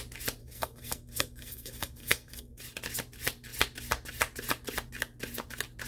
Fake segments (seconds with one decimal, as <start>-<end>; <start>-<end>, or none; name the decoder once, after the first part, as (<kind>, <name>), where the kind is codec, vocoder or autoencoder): 0.4-2.6 (codec, SNAC)